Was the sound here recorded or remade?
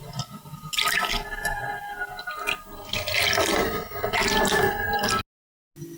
recorded